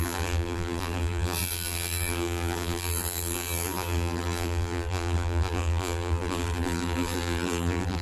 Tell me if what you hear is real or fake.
fake